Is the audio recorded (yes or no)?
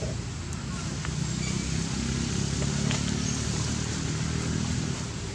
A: yes